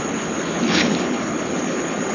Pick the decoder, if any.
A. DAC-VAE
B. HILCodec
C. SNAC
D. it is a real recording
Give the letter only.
B